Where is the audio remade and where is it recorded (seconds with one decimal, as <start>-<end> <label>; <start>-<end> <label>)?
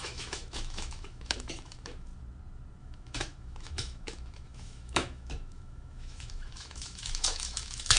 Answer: 0.0-2.1 remade; 2.1-2.8 recorded; 2.8-8.0 remade